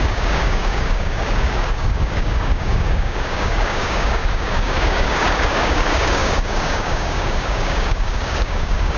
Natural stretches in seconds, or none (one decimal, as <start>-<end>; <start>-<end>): none